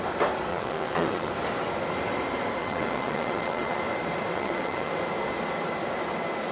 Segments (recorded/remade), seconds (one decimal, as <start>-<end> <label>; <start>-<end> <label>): 0.0-0.5 recorded; 0.5-1.3 remade; 1.3-2.6 recorded; 2.6-3.8 remade; 3.8-4.3 recorded; 4.3-4.9 remade; 4.9-6.5 recorded